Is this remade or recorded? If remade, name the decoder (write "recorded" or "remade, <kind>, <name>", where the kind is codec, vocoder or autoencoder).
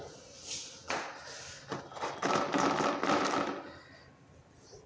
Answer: recorded